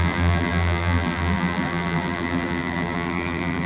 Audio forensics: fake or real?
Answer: fake